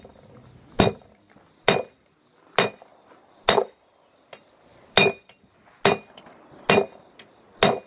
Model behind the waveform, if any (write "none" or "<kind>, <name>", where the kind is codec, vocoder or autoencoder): none